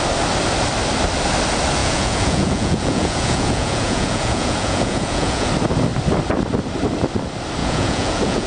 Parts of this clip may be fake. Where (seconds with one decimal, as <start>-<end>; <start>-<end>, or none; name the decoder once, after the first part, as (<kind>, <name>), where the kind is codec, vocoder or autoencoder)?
1.8-5.5 (vocoder, Vocos); 7.6-8.5